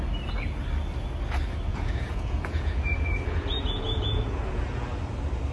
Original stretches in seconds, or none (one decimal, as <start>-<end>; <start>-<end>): 0.0-1.7; 4.6-5.5